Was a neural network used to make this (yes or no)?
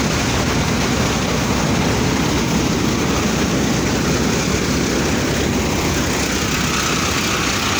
no